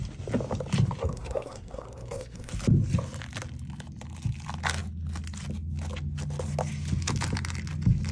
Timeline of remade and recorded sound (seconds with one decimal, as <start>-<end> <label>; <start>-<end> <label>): 0.0-1.0 recorded; 1.0-2.5 remade; 2.5-8.1 recorded